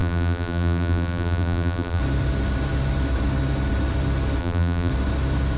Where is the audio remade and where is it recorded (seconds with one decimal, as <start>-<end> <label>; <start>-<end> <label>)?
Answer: 0.0-2.0 remade; 2.0-4.4 recorded; 4.4-4.9 remade; 4.9-5.6 recorded